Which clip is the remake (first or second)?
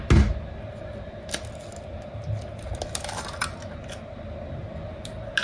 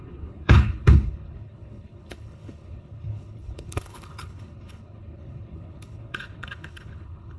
second